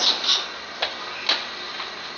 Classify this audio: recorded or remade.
recorded